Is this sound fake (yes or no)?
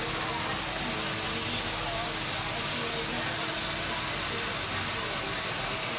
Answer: no